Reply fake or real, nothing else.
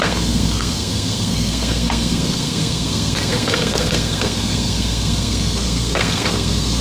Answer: fake